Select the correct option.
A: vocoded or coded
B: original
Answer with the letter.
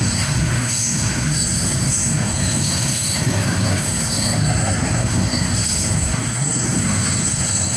A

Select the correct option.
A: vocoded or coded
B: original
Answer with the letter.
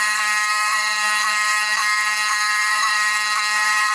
A